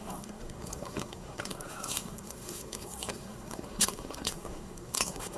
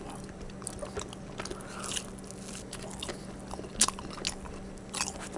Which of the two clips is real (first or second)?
second